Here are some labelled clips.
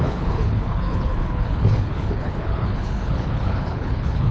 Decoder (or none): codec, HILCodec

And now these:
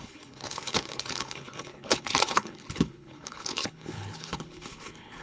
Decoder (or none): codec, HILCodec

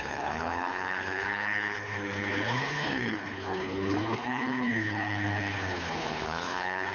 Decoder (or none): codec, HILCodec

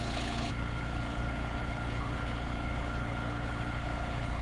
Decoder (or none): codec, HILCodec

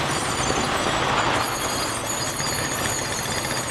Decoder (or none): none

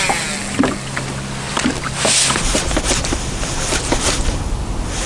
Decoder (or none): none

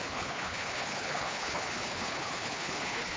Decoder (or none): codec, HILCodec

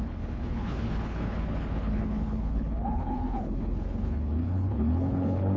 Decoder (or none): codec, HILCodec